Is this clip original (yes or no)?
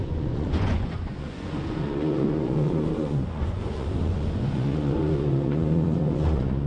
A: no